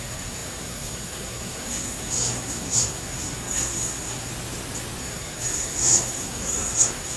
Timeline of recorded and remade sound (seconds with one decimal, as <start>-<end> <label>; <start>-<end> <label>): 0.0-4.3 remade; 4.3-5.0 recorded; 5.0-7.2 remade